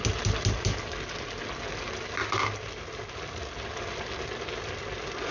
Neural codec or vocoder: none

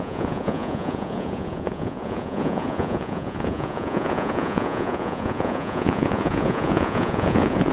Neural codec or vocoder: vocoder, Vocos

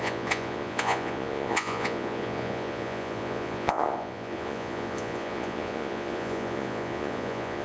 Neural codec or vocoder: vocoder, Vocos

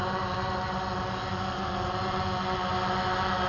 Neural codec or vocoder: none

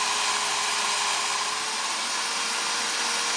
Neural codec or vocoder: none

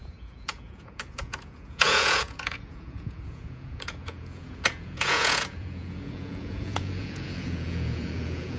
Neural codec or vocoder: vocoder, Vocos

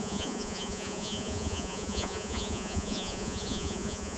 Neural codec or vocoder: vocoder, Vocos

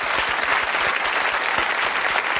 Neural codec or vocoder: none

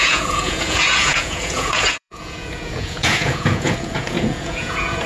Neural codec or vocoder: vocoder, Vocos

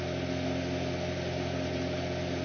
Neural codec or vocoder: none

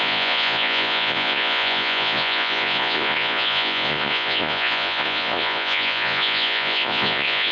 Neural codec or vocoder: vocoder, Vocos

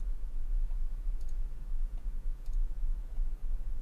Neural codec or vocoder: vocoder, Vocos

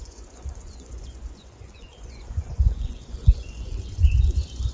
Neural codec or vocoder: vocoder, Vocos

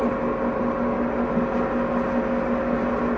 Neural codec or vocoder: none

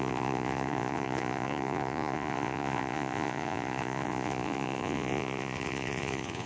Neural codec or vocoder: vocoder, Vocos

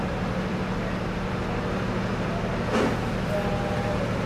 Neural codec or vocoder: none